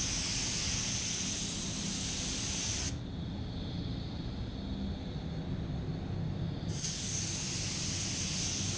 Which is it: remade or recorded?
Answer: recorded